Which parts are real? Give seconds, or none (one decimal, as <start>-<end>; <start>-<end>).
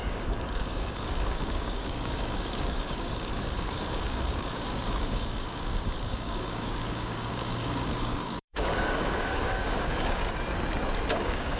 10.2-11.1